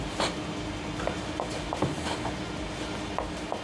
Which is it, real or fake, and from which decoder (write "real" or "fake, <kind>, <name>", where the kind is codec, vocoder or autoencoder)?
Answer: real